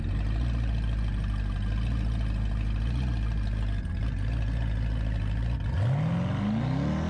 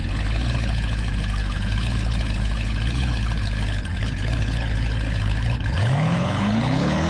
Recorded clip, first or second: first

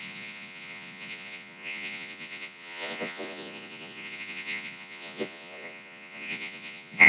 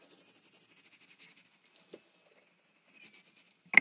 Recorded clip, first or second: second